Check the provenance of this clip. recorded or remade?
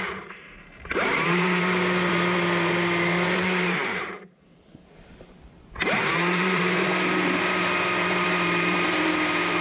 remade